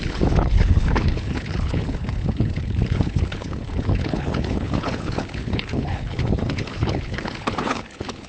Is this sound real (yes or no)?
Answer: no